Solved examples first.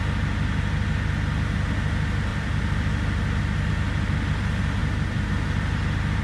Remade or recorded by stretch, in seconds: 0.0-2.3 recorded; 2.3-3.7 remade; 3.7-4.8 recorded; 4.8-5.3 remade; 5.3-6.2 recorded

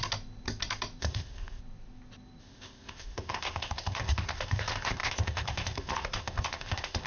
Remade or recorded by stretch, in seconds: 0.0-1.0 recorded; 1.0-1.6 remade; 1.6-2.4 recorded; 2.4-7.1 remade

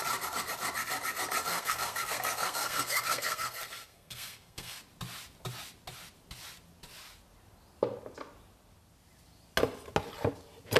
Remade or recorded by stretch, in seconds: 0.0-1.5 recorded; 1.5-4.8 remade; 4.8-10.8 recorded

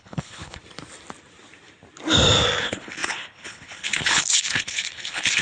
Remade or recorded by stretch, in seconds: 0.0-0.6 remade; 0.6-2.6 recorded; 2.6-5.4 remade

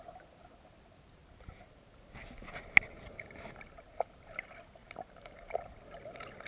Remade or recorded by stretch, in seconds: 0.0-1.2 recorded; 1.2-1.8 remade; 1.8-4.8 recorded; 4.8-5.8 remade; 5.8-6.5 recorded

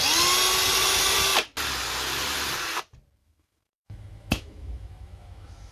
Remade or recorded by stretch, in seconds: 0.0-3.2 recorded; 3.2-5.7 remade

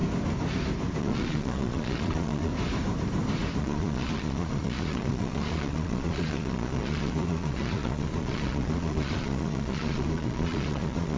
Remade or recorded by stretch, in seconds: 0.0-1.0 recorded; 1.0-2.5 remade; 2.5-3.6 recorded; 3.6-11.2 remade

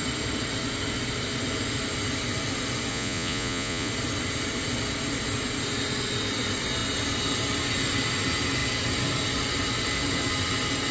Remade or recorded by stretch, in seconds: 0.0-2.9 recorded; 2.9-3.9 remade; 3.9-10.9 recorded